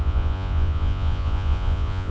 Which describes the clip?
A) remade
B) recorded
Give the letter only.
A